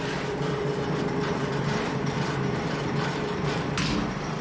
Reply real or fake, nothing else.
fake